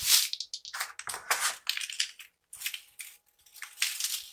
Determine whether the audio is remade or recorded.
recorded